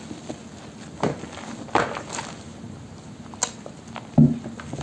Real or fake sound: real